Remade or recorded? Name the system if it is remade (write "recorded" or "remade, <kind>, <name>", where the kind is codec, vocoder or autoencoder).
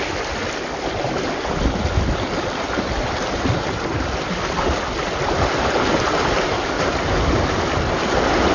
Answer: recorded